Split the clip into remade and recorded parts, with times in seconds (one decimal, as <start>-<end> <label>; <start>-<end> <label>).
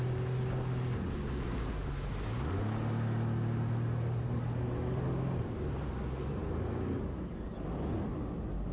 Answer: 0.0-8.7 recorded